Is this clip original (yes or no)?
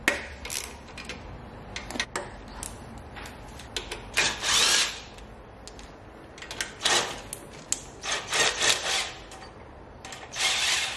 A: yes